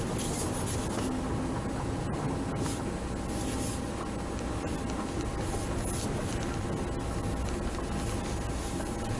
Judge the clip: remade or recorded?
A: recorded